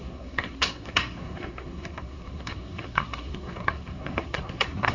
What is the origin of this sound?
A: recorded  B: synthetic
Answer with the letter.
B